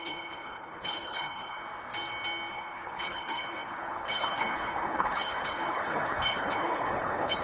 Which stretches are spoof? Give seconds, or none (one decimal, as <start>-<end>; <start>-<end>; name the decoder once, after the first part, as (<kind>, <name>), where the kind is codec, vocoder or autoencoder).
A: 0.0-1.6 (codec, HILCodec); 2.5-7.4